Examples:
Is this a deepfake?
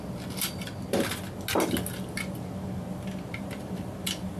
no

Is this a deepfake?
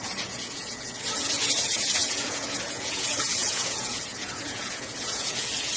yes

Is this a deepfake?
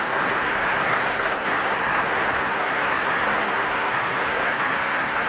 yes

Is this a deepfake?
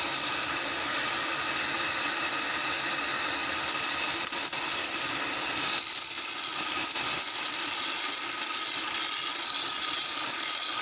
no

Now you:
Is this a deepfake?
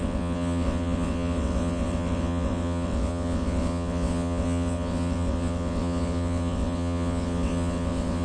yes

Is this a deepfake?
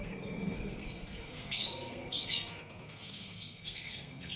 yes